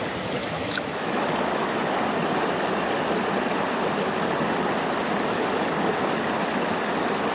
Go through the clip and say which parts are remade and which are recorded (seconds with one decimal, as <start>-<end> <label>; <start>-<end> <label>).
0.0-0.4 recorded; 0.4-1.1 remade; 1.1-7.3 recorded

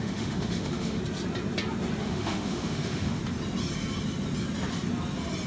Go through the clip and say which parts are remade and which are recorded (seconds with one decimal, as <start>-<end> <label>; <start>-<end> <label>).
0.0-1.0 remade; 1.0-2.0 recorded; 2.0-3.2 remade; 3.2-5.5 recorded

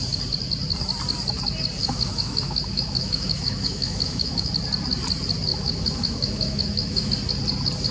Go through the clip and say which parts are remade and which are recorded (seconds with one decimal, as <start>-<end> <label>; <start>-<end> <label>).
0.0-1.8 recorded; 1.8-4.5 remade; 4.5-5.5 recorded; 5.5-7.1 remade; 7.1-7.9 recorded

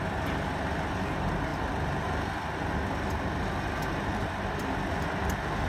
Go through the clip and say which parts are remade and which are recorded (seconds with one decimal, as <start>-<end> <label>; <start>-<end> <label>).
0.0-5.7 recorded

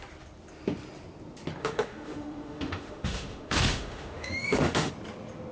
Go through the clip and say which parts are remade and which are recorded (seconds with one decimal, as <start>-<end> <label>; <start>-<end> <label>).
0.0-1.6 recorded; 1.6-4.9 remade; 4.9-5.5 recorded

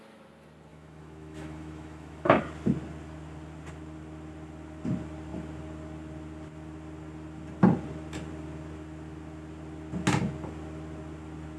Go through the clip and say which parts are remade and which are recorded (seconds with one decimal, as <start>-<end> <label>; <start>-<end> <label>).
0.0-0.7 recorded; 0.7-2.4 remade; 2.4-11.6 recorded

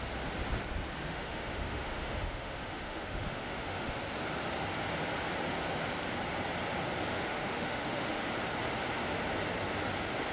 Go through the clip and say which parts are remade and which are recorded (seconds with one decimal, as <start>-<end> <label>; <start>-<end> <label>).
0.0-1.1 recorded; 1.1-4.0 remade; 4.0-7.1 recorded; 7.1-8.2 remade; 8.2-10.3 recorded